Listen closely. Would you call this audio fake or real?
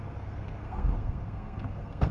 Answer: fake